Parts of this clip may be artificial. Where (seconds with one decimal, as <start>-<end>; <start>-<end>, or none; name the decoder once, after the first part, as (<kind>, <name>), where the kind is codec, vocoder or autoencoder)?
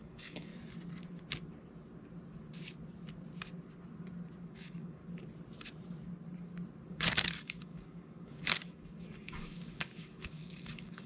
0.0-0.5 (codec, DAC); 4.5-5.0; 6.9-11.1